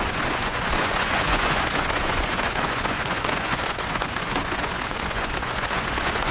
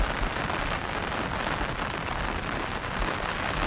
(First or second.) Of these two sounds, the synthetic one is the first